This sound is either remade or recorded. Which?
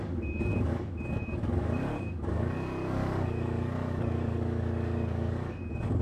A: remade